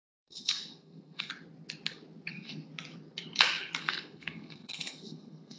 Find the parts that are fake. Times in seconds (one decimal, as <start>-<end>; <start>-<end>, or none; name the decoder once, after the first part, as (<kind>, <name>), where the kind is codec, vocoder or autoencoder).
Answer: 0.0-1.3 (codec, SNAC); 2.3-2.7; 3.8-5.6